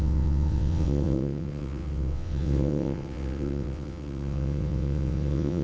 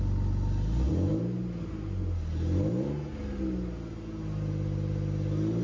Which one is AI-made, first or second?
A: first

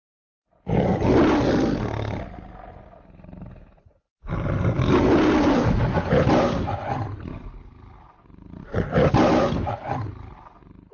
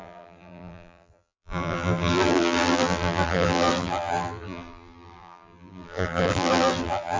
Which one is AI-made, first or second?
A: second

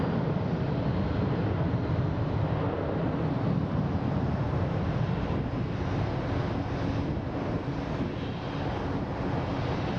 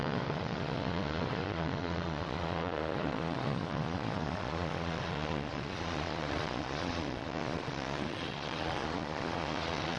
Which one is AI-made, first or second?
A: second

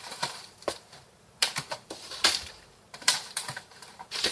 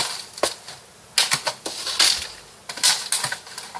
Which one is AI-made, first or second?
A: first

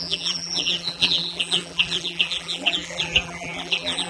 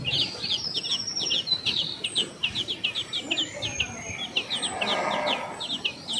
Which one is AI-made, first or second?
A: first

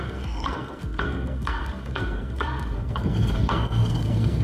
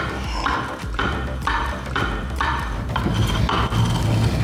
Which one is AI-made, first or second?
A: first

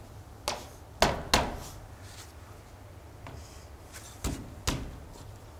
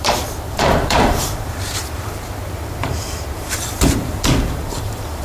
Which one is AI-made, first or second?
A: second